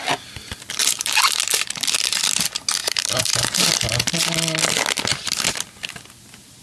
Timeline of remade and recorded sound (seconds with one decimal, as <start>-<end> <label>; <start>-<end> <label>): 0.0-0.8 recorded; 0.8-1.4 remade; 1.4-2.8 recorded; 2.8-3.7 remade; 3.7-6.6 recorded